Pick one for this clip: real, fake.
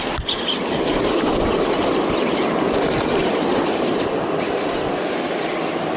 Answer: real